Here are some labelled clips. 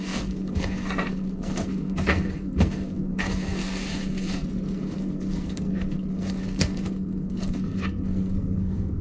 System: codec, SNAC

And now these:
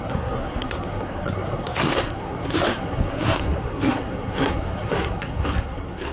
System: codec, SNAC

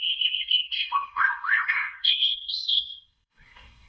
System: codec, SNAC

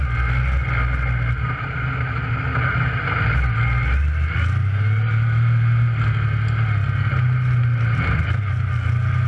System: none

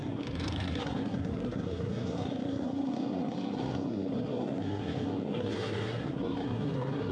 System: codec, SNAC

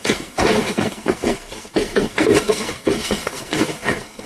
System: codec, SNAC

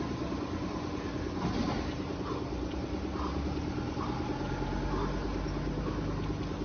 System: none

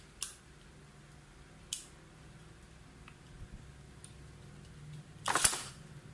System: none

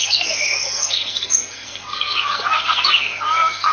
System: codec, SNAC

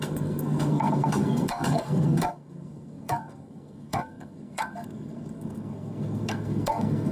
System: codec, SNAC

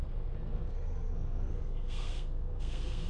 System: codec, SNAC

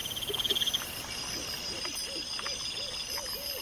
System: none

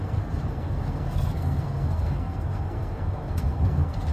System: codec, SNAC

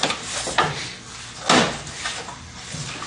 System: none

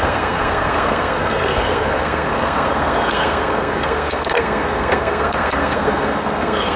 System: codec, SNAC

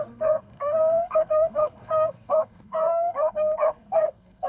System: codec, SNAC